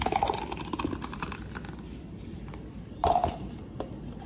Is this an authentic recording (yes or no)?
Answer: no